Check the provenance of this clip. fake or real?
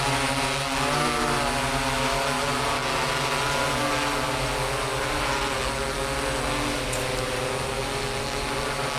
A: real